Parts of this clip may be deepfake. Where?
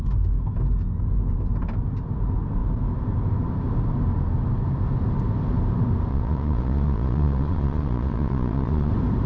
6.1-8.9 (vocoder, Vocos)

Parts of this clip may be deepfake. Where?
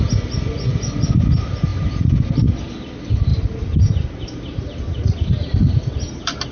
1.7-2.5 (vocoder, BigVGAN v2); 3.3-6.5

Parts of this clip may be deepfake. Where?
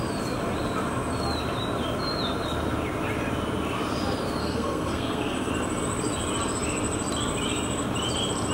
4.4-5.5 (codec, SNAC)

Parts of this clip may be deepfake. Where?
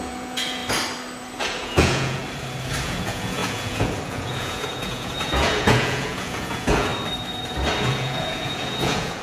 0.0-0.6 (vocoder, Vocos); 1.4-2.2; 2.8-6.9; 7.8-9.2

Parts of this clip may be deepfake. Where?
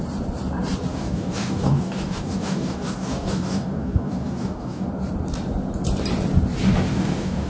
0.9-4.9 (codec, DAC); 6.9-7.5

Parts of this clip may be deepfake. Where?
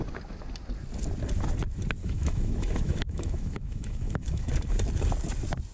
2.0-4.5 (autoencoder, DAC-VAE)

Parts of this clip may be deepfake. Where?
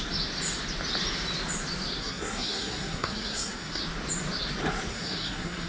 2.0-3.8 (codec, SNAC); 4.9-5.7